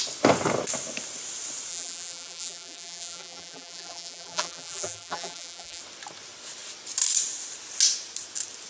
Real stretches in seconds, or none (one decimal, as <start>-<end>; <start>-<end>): 0.0-1.7; 5.8-8.7